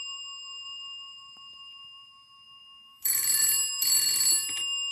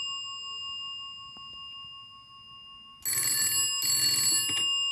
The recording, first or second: second